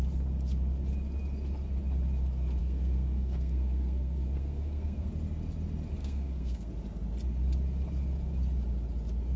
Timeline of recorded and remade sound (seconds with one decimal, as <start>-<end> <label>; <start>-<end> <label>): 0.0-2.6 recorded; 2.6-5.1 remade; 5.1-6.0 recorded; 6.0-6.7 remade; 6.7-9.4 recorded